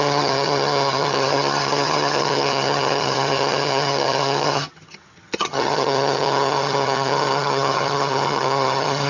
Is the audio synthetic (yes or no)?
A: yes